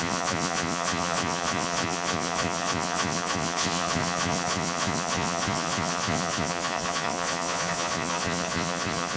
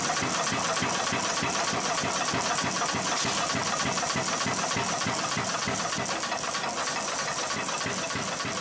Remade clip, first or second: first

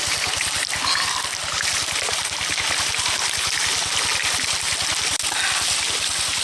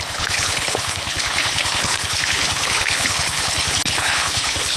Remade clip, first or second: second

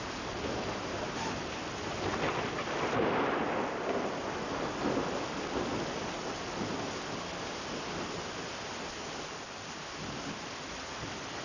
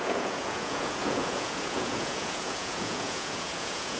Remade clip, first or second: second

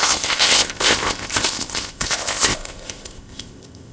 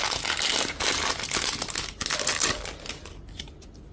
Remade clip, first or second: first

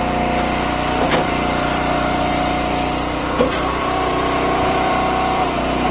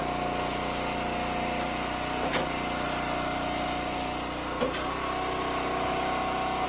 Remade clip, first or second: first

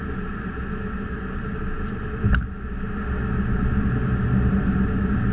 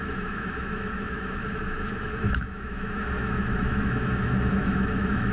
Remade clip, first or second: second